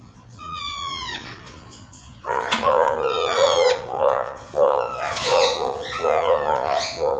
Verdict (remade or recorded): remade